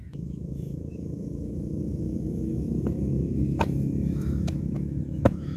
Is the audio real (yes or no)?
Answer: no